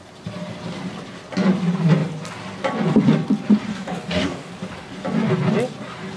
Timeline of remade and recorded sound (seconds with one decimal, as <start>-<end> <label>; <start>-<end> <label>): 0.0-3.7 recorded; 3.7-4.5 remade; 4.5-6.2 recorded

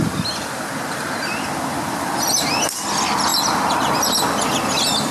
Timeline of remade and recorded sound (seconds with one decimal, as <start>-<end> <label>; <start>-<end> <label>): 0.0-5.1 recorded

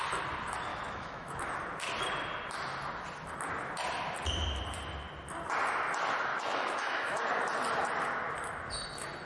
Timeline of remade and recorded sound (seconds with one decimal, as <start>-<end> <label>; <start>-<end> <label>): 0.0-0.7 recorded; 0.7-1.4 remade; 1.4-6.3 recorded; 6.3-7.3 remade; 7.3-9.3 recorded

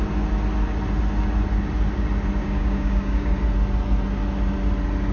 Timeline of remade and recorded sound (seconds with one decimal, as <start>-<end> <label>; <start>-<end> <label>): 0.0-2.4 recorded; 2.4-3.3 remade; 3.3-5.1 recorded

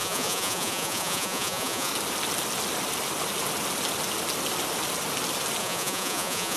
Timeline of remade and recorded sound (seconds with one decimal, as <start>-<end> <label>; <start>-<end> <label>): 0.0-1.9 remade; 1.9-5.6 recorded; 5.6-6.6 remade

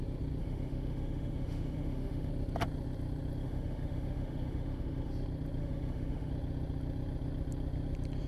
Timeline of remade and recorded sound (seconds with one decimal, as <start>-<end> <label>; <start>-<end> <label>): 0.0-0.4 recorded; 0.4-2.3 remade; 2.3-3.4 recorded; 3.4-5.1 remade; 5.1-5.6 recorded; 5.6-6.3 remade; 6.3-8.3 recorded

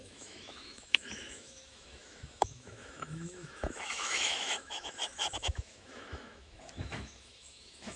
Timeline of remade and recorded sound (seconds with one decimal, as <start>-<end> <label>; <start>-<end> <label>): 0.0-8.0 remade